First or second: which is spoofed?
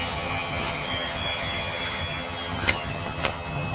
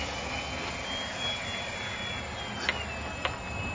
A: first